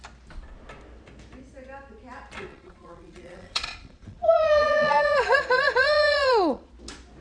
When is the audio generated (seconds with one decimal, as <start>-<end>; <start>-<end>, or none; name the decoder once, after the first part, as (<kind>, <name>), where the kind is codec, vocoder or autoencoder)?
2.5-6.7 (vocoder, Vocos)